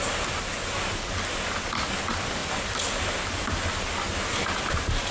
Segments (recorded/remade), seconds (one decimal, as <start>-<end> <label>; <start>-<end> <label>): 0.0-5.1 recorded